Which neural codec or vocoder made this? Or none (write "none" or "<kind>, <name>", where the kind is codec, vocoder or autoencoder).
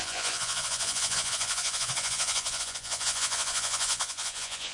vocoder, Vocos